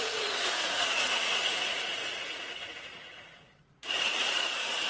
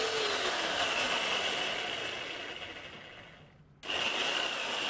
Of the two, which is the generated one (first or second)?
first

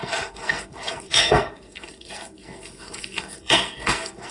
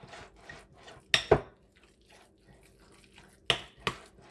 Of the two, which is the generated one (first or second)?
first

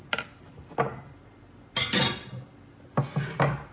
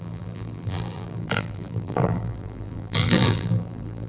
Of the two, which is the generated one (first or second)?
second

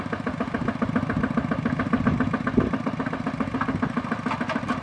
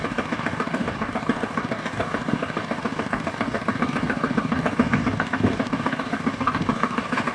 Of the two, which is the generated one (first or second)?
second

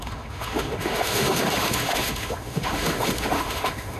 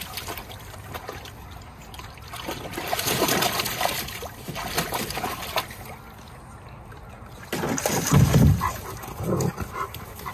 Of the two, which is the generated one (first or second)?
first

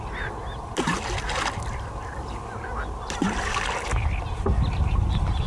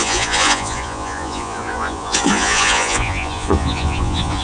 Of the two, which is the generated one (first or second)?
second